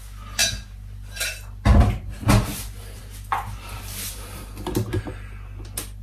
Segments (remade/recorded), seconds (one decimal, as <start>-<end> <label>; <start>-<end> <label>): 0.0-6.0 recorded